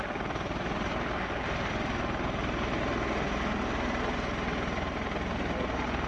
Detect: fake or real real